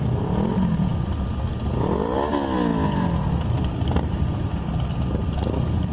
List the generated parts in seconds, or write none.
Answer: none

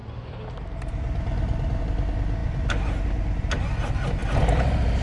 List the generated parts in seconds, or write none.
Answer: none

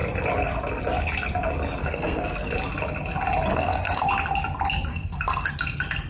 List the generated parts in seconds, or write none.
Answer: 1.8-2.5 (codec, SNAC); 3.5-4.1; 4.9-5.5